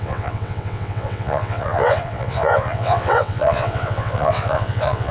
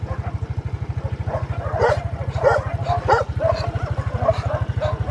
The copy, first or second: first